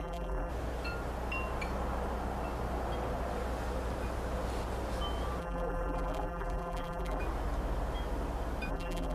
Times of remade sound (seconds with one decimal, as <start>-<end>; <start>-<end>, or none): 0.0-0.5; 5.4-7.2; 8.7-9.1